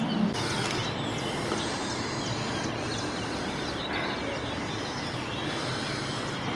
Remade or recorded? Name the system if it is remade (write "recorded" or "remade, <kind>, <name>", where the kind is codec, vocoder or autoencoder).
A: recorded